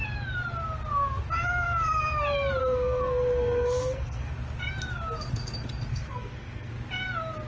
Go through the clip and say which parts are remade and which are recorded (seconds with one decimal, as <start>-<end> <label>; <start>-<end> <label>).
0.0-2.6 recorded; 2.6-4.3 remade; 4.3-5.9 recorded; 5.9-6.7 remade; 6.7-7.5 recorded